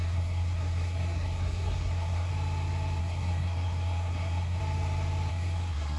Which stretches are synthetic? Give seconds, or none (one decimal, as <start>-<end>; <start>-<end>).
0.0-2.3; 3.0-4.6; 5.3-6.0